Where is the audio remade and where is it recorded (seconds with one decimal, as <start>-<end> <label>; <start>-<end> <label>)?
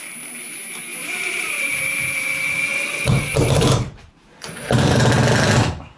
0.0-2.7 recorded; 2.7-5.0 remade; 5.0-6.0 recorded